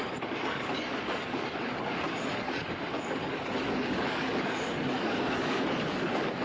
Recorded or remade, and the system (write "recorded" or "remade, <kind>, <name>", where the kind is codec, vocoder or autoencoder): remade, codec, DAC